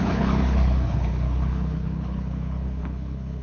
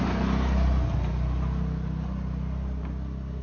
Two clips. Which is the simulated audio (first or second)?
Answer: first